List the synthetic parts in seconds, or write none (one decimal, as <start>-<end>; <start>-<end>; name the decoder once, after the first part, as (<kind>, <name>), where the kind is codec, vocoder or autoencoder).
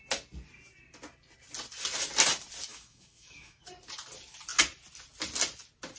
2.7-3.6 (autoencoder, DAC-VAE)